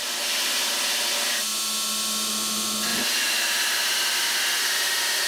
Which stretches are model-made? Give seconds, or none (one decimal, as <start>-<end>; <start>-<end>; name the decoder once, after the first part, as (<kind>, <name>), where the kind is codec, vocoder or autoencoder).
none